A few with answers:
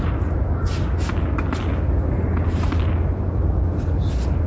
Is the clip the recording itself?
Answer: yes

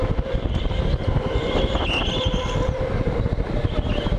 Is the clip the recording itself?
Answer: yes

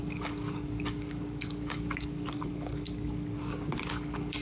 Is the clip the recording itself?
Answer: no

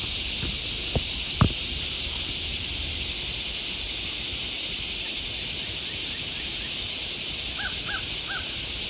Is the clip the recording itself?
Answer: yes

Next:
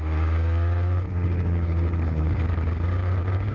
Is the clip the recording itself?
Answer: no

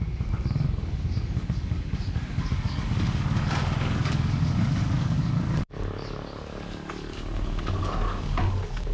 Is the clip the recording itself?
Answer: no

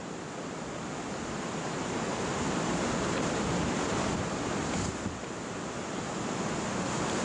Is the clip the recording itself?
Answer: yes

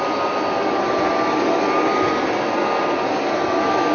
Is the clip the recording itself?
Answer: yes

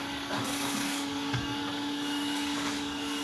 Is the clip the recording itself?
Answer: no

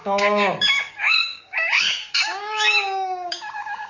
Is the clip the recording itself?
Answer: no